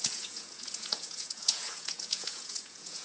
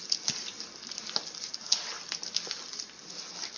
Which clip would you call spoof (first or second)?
first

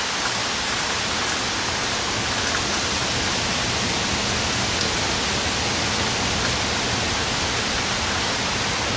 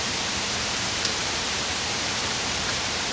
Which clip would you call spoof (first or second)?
second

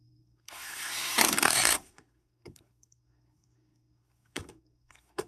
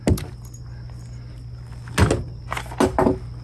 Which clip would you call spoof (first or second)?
first